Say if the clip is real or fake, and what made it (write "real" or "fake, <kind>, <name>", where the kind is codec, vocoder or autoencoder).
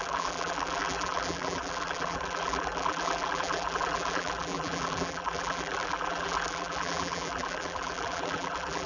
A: fake, vocoder, BigVGAN v2